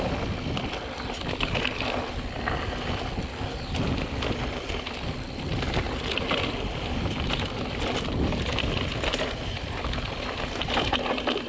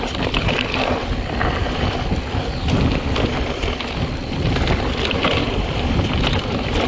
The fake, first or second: second